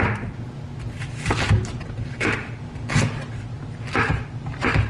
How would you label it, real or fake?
real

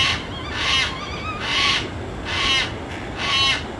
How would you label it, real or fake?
real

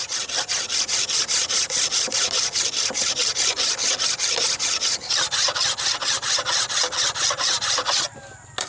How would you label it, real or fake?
real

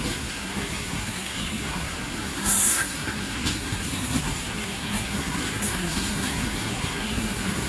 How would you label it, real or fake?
fake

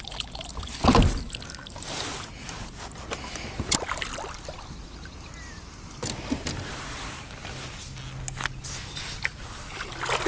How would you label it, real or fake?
real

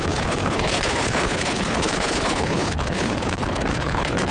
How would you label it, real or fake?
fake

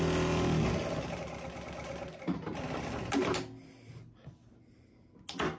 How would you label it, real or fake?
real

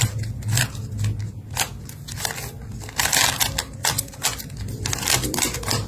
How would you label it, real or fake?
real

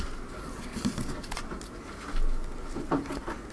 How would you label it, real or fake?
real